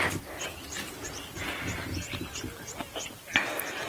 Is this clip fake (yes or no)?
no